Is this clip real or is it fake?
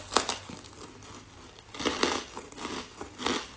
real